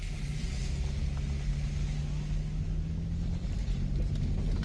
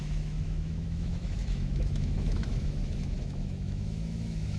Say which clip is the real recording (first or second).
first